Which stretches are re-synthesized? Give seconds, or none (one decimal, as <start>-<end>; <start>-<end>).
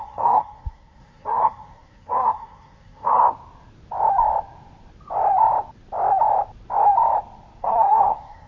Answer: 0.0-3.2; 7.6-8.5